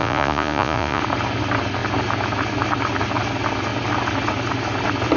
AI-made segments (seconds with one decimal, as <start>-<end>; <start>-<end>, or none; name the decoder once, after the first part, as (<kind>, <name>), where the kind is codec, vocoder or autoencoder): 0.0-1.0 (vocoder, Vocos)